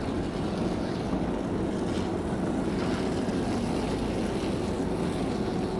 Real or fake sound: real